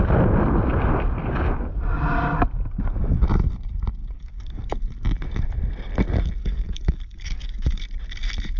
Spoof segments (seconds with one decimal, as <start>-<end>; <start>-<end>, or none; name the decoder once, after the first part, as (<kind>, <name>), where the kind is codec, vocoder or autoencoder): 4.0-4.6 (codec, DAC); 6.4-7.8

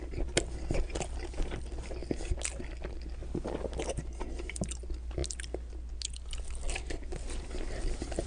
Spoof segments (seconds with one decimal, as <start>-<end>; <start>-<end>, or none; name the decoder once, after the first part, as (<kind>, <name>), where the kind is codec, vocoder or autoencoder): none